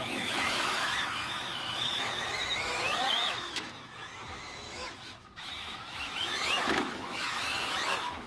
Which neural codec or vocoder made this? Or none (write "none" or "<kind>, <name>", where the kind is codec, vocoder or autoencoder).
autoencoder, DAC-VAE